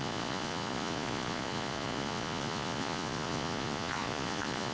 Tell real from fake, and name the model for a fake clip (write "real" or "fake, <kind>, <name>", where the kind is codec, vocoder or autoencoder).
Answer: fake, vocoder, Vocos